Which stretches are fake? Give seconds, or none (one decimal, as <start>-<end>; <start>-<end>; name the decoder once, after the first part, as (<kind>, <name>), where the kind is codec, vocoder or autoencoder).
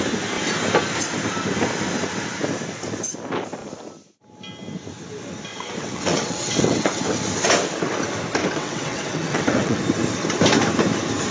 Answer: 5.5-7.0 (vocoder, WaveNeXt); 8.4-9.8